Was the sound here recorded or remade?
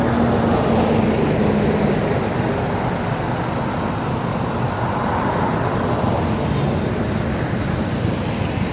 recorded